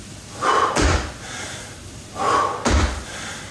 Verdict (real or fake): real